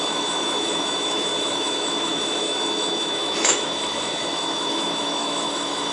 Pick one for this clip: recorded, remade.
remade